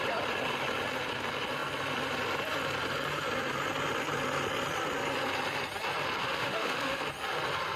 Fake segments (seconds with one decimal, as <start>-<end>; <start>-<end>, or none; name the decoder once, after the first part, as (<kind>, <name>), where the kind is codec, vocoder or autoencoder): 6.2-7.0 (autoencoder, DAC-VAE)